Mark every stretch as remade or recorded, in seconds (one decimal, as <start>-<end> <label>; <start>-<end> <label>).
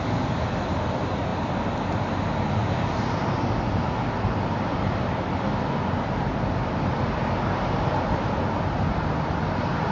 0.0-9.9 recorded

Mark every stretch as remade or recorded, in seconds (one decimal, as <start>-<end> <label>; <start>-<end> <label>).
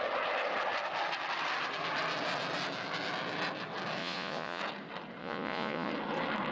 0.0-4.0 recorded; 4.0-4.6 remade; 4.6-5.2 recorded; 5.2-5.9 remade; 5.9-6.5 recorded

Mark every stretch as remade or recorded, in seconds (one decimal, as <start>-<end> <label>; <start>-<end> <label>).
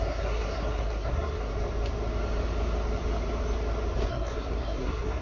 0.0-1.5 remade; 1.5-4.1 recorded; 4.1-5.2 remade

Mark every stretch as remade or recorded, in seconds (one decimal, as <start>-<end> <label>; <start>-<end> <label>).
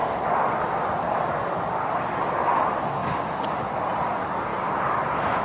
0.0-3.0 recorded; 3.0-3.6 remade; 3.6-4.5 recorded; 4.5-5.4 remade